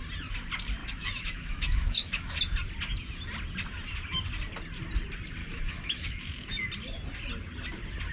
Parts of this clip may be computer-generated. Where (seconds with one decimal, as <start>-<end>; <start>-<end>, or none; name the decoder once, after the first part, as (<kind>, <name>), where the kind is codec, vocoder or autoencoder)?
0.8-2.4 (autoencoder, DAC-VAE); 5.4-6.5